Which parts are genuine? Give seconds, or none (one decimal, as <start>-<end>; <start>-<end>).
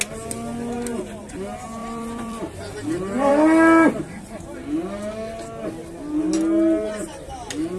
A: 0.0-1.8; 2.6-7.8